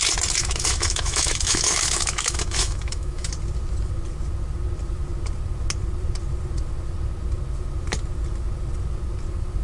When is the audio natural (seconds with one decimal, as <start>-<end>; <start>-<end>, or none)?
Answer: 0.0-0.4; 3.3-9.6